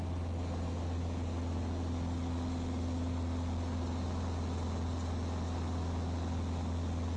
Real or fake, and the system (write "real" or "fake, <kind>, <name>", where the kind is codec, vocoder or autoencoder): real